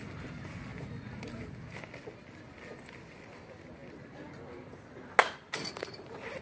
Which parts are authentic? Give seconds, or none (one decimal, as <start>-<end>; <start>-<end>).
0.0-6.4